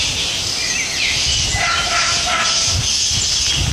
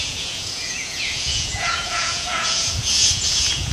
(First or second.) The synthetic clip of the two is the second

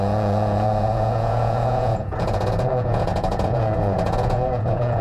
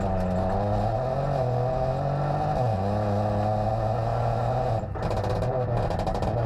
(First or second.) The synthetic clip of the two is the first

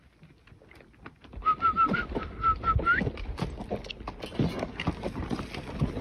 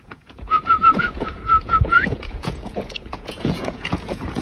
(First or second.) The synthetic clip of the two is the second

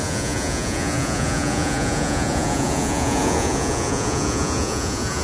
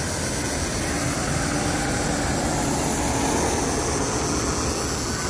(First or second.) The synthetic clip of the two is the first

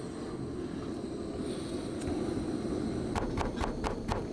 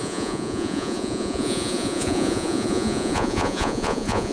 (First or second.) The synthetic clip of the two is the second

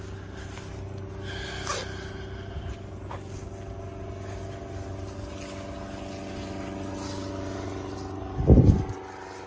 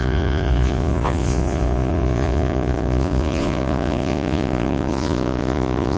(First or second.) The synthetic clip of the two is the second